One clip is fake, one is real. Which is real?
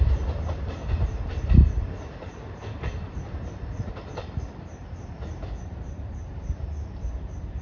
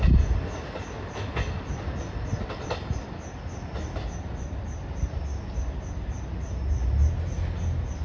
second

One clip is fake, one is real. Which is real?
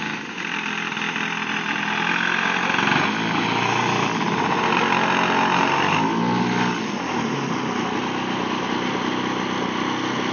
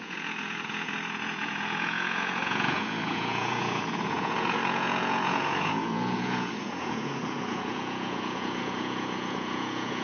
first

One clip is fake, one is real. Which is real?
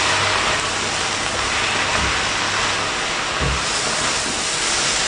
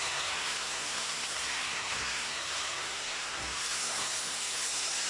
first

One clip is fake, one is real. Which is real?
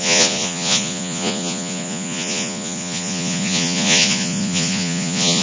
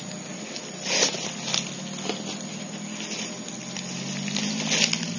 second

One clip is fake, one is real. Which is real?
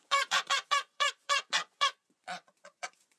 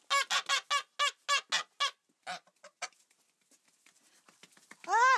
second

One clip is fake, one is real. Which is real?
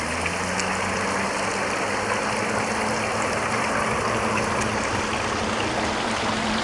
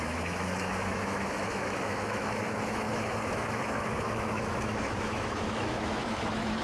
first